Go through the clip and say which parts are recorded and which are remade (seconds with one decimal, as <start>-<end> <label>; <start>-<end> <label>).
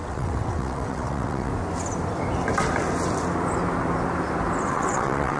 0.0-1.5 remade; 1.5-4.7 recorded; 4.7-5.4 remade